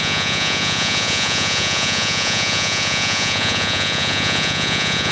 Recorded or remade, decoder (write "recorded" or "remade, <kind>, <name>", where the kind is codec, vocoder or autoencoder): remade, vocoder, Vocos